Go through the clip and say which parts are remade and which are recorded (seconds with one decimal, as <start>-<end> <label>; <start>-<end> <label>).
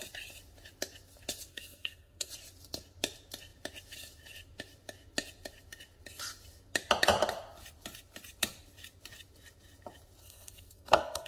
0.0-1.5 recorded; 1.5-2.3 remade; 2.3-10.2 recorded; 10.2-11.3 remade